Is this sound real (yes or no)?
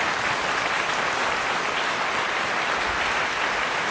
yes